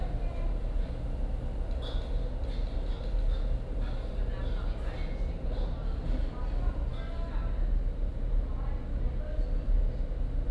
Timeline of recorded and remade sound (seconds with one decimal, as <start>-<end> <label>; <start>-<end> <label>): 0.0-10.5 recorded